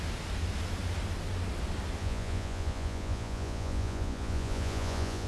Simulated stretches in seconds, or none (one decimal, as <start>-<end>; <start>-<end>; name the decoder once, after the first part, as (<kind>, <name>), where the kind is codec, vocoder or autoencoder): 2.0-5.3 (vocoder, Vocos)